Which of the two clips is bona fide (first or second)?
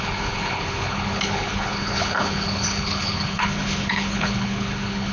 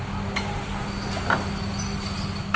second